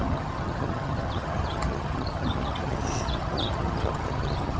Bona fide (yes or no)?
no